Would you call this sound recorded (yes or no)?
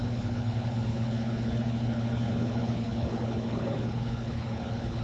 no